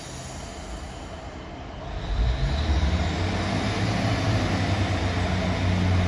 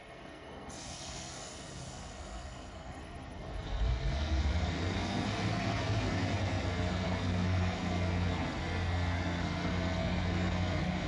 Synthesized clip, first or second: second